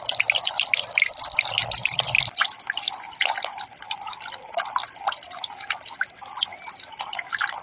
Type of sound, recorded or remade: recorded